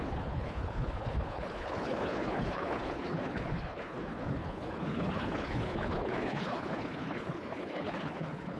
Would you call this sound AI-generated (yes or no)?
yes